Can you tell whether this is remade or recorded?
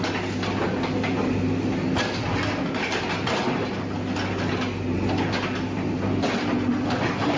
recorded